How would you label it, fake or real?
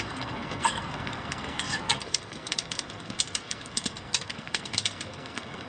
fake